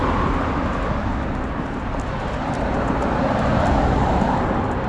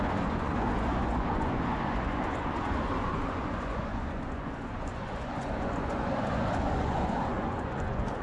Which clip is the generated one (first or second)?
second